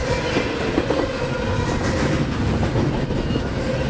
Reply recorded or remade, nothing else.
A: recorded